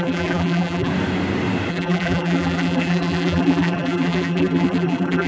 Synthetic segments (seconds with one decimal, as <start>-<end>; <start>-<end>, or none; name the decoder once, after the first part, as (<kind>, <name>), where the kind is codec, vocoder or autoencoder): 0.0-0.9 (vocoder, BigVGAN v2); 1.7-5.3